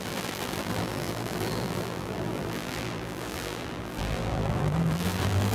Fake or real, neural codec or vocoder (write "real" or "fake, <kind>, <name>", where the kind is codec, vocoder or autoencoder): fake, vocoder, BigVGAN v2